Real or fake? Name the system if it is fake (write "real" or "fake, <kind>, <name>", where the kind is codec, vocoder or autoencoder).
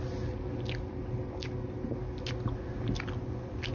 real